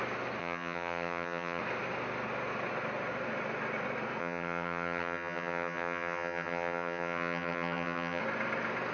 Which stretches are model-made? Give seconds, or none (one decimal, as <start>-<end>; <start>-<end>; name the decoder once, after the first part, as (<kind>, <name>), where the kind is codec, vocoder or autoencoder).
0.4-1.6 (vocoder, HiFi-GAN); 4.2-8.2